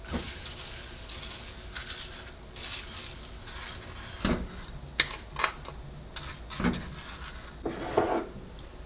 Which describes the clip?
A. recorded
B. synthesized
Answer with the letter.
A